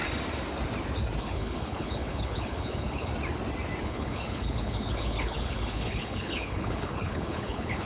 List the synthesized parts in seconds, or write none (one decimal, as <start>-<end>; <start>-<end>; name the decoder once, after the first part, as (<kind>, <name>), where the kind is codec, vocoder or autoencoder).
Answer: 1.2-3.1 (codec, HILCodec); 3.8-7.9